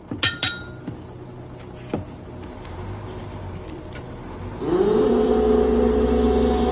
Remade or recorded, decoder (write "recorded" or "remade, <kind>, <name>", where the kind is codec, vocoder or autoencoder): recorded